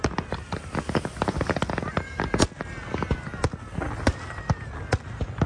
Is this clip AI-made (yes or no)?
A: no